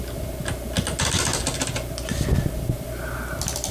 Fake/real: real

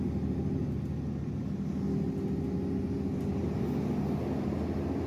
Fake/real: real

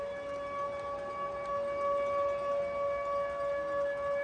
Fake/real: real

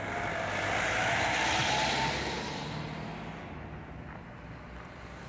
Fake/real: real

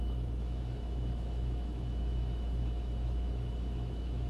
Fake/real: fake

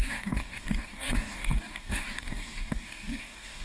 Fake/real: fake